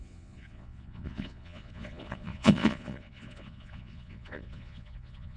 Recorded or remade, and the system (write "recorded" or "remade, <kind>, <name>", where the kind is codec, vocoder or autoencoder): remade, vocoder, Vocos